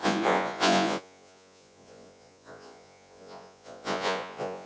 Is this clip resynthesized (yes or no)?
yes